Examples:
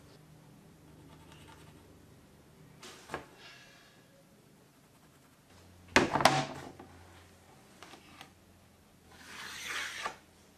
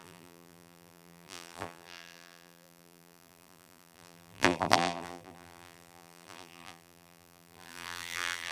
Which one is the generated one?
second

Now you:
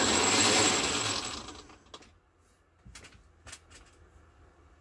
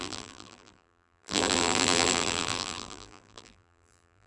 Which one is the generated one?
second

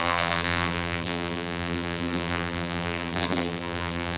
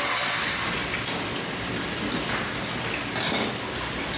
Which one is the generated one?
first